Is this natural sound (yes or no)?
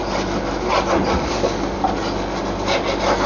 yes